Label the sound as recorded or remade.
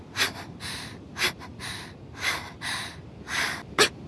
recorded